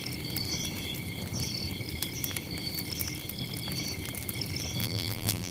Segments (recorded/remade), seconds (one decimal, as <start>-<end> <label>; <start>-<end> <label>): 0.0-4.8 recorded; 4.8-5.5 remade